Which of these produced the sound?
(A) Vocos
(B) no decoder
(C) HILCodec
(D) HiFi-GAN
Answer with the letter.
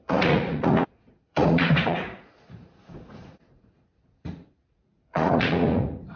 A